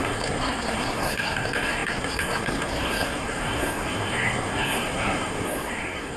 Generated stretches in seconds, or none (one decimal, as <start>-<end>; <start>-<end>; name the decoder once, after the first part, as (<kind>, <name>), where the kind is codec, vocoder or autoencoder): 0.0-6.2 (codec, SNAC)